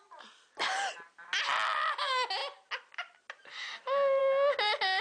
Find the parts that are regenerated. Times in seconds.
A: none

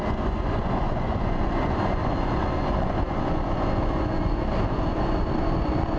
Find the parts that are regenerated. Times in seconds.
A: 0.0-6.0

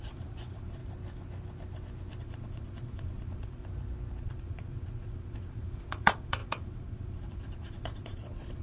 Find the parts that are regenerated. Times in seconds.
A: 0.0-0.8; 2.2-3.6; 4.2-8.6